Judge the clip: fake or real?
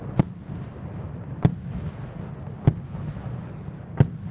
real